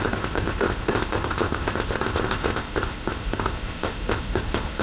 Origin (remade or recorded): remade